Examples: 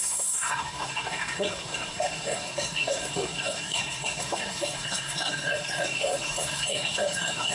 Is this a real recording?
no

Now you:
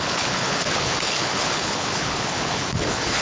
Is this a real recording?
no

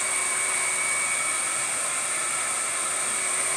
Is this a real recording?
yes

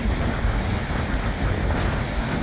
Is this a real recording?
yes